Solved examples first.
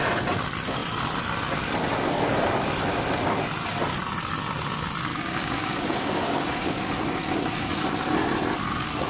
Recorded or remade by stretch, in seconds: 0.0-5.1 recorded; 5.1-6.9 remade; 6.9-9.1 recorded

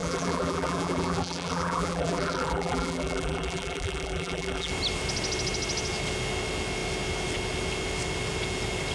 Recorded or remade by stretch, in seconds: 0.0-4.7 remade; 4.7-8.9 recorded

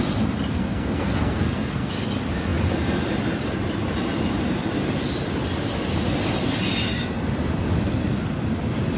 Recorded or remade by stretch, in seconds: 0.0-0.6 recorded; 0.6-1.9 remade; 1.9-9.0 recorded

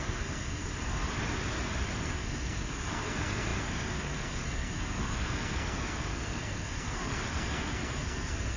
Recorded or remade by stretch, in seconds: 0.0-0.7 remade; 0.7-2.0 recorded; 2.0-8.6 remade

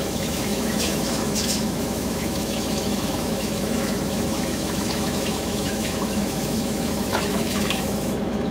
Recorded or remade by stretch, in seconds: 0.0-8.5 remade

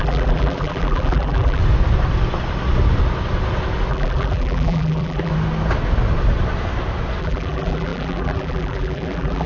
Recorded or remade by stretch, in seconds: 0.0-1.6 remade; 1.6-3.9 recorded; 3.9-5.3 remade; 5.3-7.2 recorded; 7.2-9.5 remade

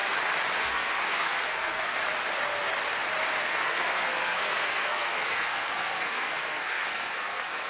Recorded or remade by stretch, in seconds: 0.0-0.6 recorded; 0.6-2.0 remade; 2.0-3.4 recorded; 3.4-7.7 remade